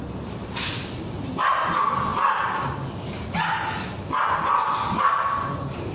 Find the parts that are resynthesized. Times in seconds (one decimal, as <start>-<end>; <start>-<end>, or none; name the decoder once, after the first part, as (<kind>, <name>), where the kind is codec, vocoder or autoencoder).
none